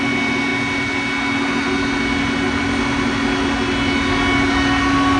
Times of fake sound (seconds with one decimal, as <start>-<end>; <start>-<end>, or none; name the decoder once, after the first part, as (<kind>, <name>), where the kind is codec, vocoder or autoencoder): none